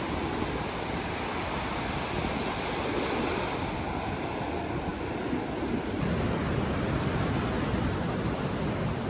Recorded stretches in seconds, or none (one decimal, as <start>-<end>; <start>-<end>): 0.0-9.1